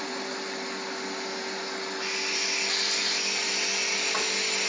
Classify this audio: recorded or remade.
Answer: recorded